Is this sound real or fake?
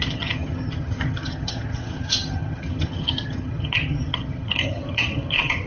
fake